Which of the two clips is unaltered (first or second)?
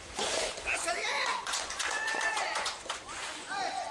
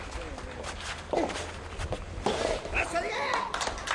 second